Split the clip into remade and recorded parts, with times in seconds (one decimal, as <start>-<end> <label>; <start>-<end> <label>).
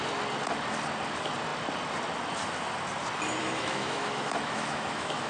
0.0-3.4 recorded; 3.4-5.3 remade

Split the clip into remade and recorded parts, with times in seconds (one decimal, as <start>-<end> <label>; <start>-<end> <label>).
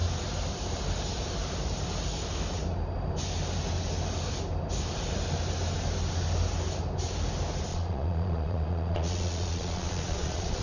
0.0-7.7 recorded; 7.7-10.6 remade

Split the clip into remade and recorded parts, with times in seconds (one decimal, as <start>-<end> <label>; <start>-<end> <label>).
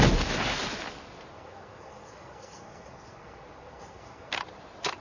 0.0-1.3 recorded; 1.3-4.3 remade; 4.3-5.0 recorded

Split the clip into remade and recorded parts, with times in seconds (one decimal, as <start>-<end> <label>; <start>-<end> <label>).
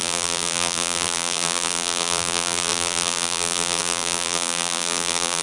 0.0-5.4 remade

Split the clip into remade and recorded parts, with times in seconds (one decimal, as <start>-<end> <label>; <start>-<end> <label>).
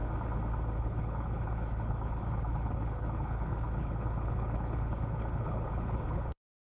0.0-0.8 recorded; 0.8-6.8 remade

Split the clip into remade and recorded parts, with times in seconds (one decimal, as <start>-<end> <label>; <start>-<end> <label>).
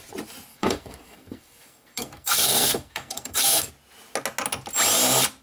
0.0-0.5 recorded; 0.5-3.7 remade; 3.7-5.4 recorded